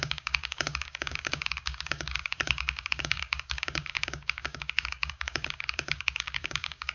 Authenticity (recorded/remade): remade